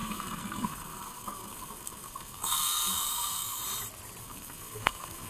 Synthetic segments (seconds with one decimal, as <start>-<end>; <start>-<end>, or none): 0.0-3.6; 4.2-5.3